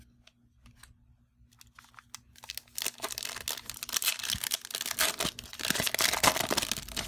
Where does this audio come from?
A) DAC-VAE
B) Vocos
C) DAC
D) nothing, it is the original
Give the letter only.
D